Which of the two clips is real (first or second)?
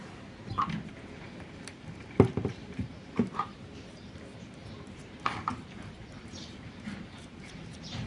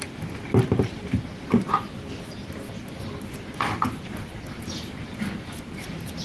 second